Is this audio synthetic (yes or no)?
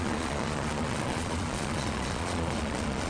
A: yes